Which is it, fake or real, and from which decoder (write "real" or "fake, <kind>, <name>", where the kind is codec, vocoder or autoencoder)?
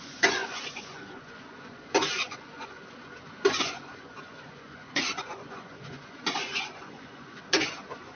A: fake, vocoder, Vocos